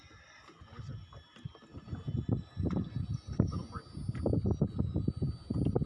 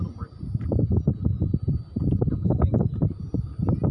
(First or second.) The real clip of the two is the first